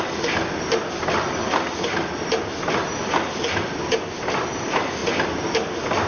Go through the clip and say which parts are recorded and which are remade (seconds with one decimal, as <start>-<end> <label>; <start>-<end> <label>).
0.0-6.1 recorded